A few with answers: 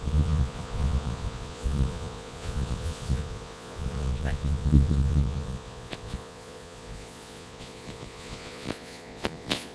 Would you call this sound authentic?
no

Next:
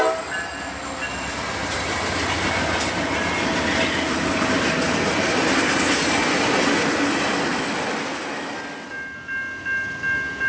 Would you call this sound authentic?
yes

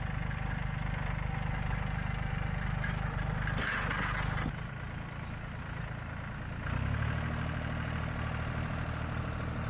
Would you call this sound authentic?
yes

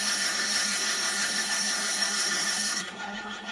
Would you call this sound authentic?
no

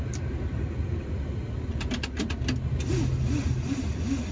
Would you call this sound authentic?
yes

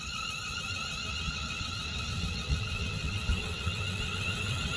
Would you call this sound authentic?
no